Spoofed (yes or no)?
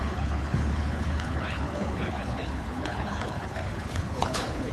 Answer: yes